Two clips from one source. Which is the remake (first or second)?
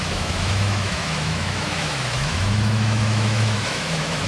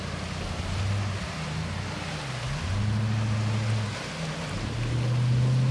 first